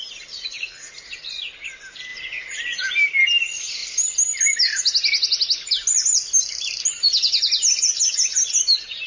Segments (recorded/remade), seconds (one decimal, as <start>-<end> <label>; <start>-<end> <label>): 0.0-9.1 recorded